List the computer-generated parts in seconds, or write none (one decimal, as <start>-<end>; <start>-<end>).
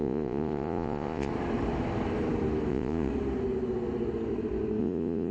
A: 0.0-1.3; 2.7-3.1; 4.8-5.3